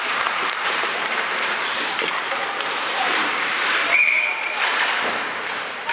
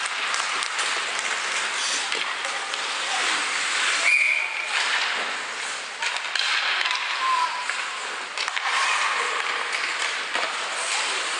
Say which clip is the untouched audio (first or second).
second